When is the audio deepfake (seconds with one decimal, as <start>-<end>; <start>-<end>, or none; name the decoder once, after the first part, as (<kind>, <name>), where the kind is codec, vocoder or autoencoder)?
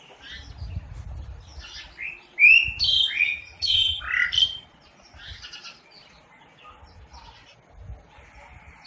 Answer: 3.2-4.0 (vocoder, HiFi-GAN)